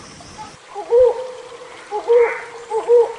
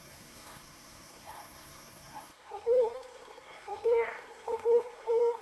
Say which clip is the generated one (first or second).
second